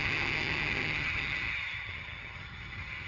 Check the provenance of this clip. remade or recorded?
remade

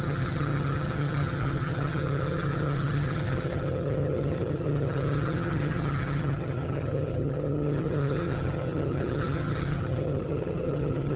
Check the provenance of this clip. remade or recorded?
remade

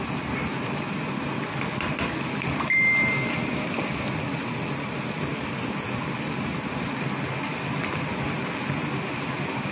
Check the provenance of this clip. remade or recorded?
recorded